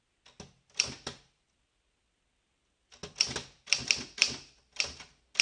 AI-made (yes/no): no